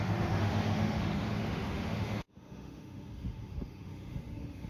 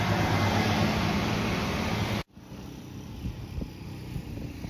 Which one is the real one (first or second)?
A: second